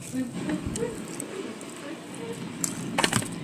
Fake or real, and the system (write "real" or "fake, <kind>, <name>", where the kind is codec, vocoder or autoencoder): fake, vocoder, BigVGAN v2